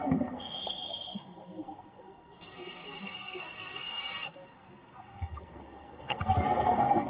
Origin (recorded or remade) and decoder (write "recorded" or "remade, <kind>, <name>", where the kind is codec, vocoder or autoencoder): remade, codec, SNAC